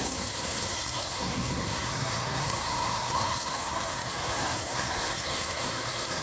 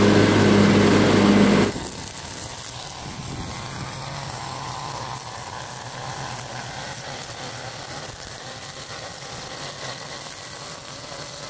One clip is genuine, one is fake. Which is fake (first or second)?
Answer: first